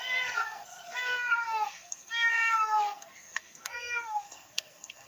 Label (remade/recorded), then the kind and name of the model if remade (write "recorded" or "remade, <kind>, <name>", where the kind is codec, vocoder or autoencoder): remade, codec, SNAC